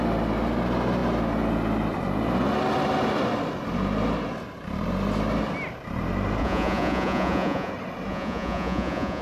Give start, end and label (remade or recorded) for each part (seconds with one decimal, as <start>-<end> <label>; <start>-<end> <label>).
0.0-6.4 recorded; 6.4-7.7 remade; 7.7-8.1 recorded; 8.1-9.2 remade